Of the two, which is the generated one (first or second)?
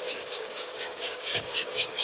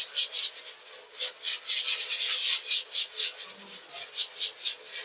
first